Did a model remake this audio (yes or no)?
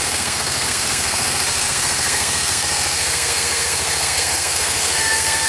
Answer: yes